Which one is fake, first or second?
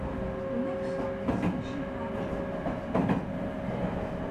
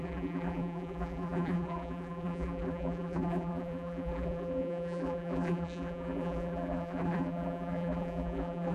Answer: second